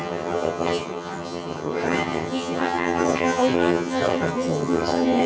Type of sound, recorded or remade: remade